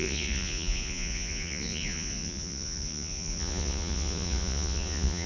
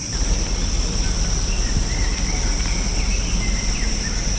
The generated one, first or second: first